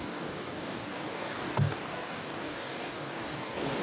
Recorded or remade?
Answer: remade